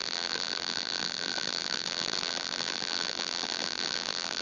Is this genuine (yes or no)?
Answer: no